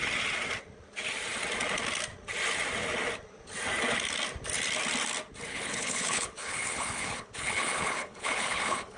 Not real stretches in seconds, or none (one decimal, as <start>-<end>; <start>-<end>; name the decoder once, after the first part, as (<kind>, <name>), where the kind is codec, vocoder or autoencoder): 5.5-9.0 (codec, HILCodec)